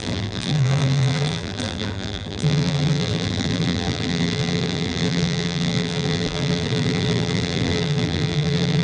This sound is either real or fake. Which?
fake